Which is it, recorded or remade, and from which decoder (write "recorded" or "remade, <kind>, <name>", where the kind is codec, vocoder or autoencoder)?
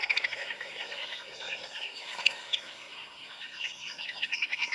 remade, codec, SNAC